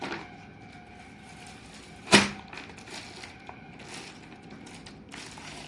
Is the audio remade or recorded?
recorded